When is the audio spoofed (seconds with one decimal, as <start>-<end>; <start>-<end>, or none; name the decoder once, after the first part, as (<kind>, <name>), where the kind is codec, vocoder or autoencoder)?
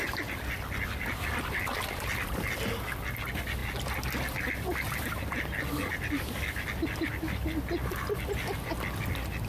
7.1-8.4 (vocoder, BigVGAN v2)